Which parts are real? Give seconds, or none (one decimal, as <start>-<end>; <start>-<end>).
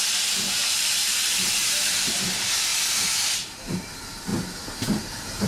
0.0-0.6; 2.2-5.5